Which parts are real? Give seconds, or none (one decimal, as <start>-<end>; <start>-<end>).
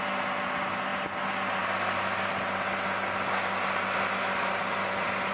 0.0-5.3